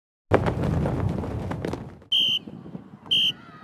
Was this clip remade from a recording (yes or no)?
no